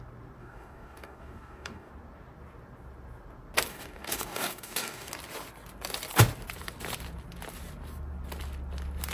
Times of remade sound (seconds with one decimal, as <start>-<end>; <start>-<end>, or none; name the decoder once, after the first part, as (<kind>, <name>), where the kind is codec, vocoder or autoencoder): 0.4-1.9 (codec, DAC); 3.7-5.1